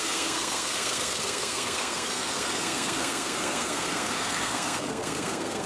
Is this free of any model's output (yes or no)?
no